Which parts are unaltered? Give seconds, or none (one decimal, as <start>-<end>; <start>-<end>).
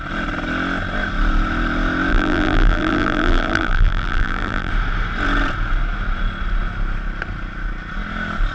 0.0-2.1; 4.7-8.5